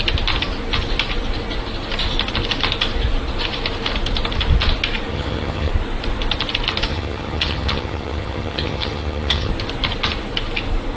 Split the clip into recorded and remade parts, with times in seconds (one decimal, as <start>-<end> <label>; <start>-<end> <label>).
0.0-5.1 recorded; 5.1-5.7 remade; 5.7-6.9 recorded; 6.9-9.5 remade; 9.5-11.0 recorded